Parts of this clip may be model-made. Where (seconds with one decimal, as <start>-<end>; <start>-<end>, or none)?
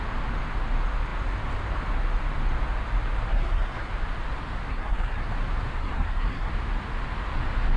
3.3-3.9; 4.7-5.3; 5.8-6.5